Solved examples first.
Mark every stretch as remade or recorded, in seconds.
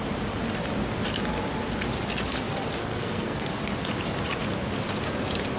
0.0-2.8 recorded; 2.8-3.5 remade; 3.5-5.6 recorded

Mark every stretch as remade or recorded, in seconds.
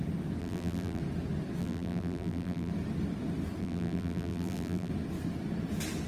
0.0-0.4 recorded; 0.4-1.0 remade; 1.0-1.6 recorded; 1.6-2.7 remade; 2.7-3.6 recorded; 3.6-4.9 remade; 4.9-6.1 recorded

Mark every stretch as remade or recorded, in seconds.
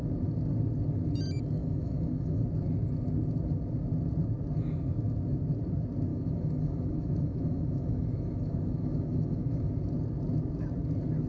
0.0-1.6 recorded; 1.6-2.4 remade; 2.4-6.1 recorded; 6.1-9.7 remade; 9.7-11.3 recorded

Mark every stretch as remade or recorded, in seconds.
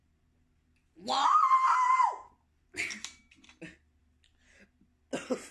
0.0-5.5 recorded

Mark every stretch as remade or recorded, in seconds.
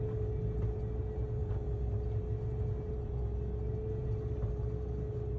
0.0-5.4 recorded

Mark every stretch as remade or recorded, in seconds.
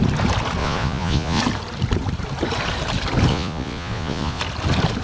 0.0-0.6 recorded; 0.6-1.4 remade; 1.4-3.3 recorded; 3.3-4.4 remade; 4.4-5.0 recorded